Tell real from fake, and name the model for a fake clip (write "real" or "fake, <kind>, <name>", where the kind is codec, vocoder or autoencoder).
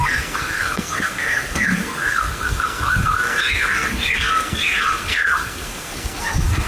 fake, codec, SNAC